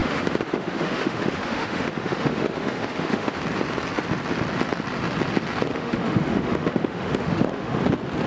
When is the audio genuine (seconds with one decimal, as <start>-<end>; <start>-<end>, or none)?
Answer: 3.4-5.7; 7.8-8.3